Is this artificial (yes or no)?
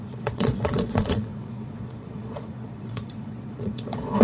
yes